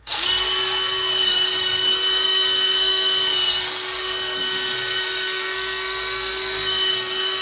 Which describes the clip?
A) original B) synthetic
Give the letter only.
B